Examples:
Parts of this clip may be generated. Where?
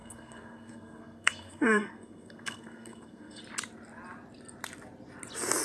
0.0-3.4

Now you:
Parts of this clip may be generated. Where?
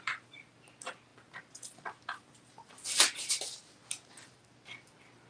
none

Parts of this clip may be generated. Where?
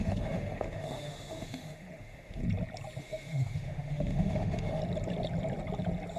0.0-2.4; 3.0-4.8